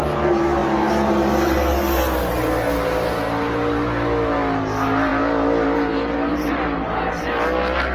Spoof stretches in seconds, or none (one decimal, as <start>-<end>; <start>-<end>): none

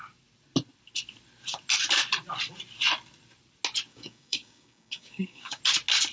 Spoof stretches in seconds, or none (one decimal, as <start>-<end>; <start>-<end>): 3.9-5.6

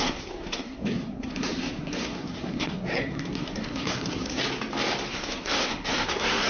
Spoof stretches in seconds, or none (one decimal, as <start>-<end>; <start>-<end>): 0.0-4.4; 5.1-6.5

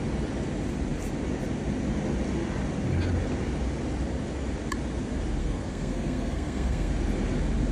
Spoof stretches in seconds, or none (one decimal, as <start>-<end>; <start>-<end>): 5.4-6.9

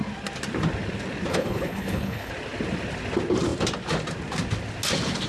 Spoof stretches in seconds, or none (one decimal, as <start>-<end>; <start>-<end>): 1.3-2.3

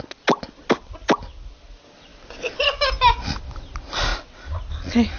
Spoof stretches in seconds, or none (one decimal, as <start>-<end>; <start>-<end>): none

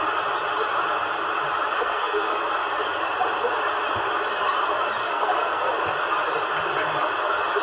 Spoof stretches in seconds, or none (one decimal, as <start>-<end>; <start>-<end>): 1.7-2.4; 5.0-5.7